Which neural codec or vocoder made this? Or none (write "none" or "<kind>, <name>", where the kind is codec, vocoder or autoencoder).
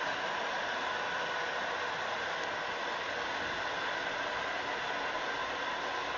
none